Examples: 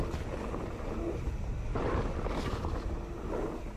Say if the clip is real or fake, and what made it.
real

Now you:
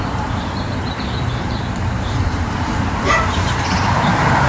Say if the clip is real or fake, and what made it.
fake, vocoder, BigVGAN v2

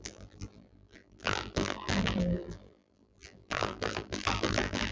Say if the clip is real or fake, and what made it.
fake, vocoder, BigVGAN v2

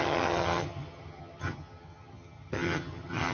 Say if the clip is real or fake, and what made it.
fake, vocoder, HiFi-GAN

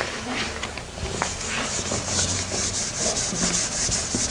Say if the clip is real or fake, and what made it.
real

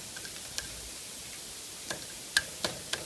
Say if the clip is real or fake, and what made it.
real